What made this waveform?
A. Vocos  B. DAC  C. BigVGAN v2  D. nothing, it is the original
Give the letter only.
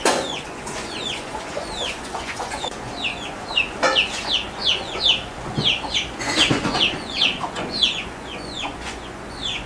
A